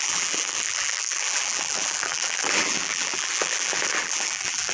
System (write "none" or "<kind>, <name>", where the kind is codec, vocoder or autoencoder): vocoder, BigVGAN v2